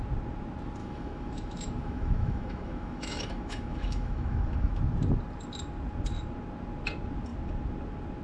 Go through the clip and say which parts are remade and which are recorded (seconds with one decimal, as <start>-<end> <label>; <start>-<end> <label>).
0.0-0.8 recorded; 0.8-4.8 remade; 4.8-8.2 recorded